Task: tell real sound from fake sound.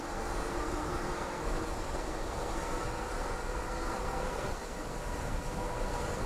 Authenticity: fake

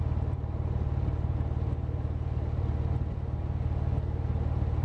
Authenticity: real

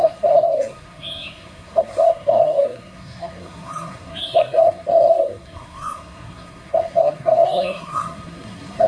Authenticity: fake